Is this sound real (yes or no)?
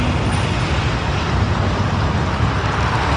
yes